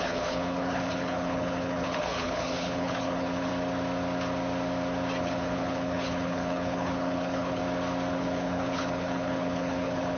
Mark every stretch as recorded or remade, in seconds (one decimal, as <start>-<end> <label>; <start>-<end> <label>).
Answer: 0.0-3.5 remade; 3.5-5.2 recorded; 5.2-7.6 remade; 7.6-8.1 recorded; 8.1-10.2 remade